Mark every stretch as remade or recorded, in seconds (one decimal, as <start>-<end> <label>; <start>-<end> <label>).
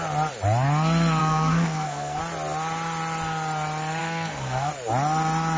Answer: 0.0-1.2 recorded; 1.2-2.2 remade; 2.2-4.0 recorded; 4.0-4.7 remade; 4.7-5.6 recorded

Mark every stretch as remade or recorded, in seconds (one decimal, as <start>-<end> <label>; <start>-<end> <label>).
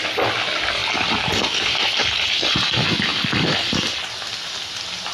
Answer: 0.0-5.1 recorded